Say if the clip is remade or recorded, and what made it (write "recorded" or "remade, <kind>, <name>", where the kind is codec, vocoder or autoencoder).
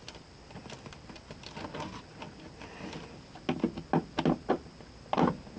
recorded